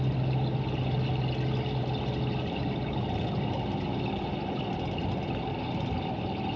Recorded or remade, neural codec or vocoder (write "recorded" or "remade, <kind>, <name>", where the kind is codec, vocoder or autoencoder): recorded